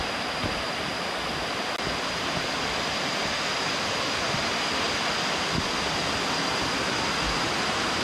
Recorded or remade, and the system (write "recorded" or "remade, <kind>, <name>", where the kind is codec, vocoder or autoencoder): recorded